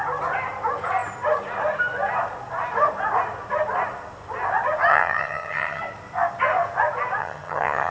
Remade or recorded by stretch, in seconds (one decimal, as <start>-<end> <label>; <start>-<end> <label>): 0.0-4.9 recorded; 4.9-5.8 remade; 5.8-7.2 recorded; 7.2-7.9 remade